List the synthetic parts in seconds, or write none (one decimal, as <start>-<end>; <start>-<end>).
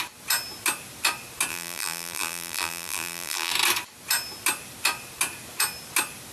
1.5-3.5